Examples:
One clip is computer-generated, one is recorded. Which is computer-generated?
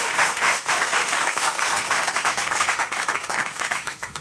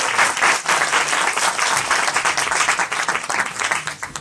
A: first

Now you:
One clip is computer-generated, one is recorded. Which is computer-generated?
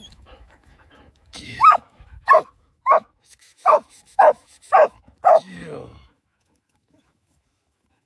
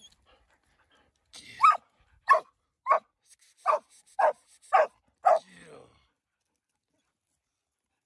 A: first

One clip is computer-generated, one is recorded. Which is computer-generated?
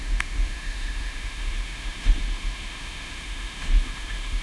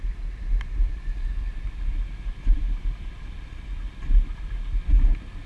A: first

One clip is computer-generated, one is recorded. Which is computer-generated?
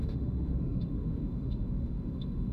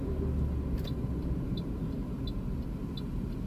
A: first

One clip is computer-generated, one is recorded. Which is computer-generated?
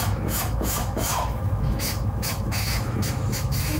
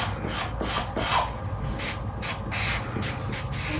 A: first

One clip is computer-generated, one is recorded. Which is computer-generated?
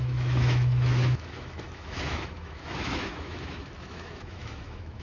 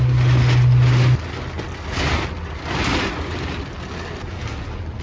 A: first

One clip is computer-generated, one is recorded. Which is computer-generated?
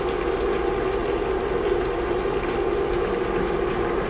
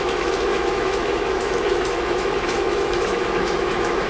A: second